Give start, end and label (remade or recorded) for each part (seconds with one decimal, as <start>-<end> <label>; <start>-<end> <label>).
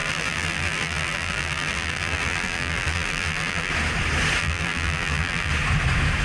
0.0-3.7 remade; 3.7-4.4 recorded; 4.4-5.5 remade; 5.5-6.2 recorded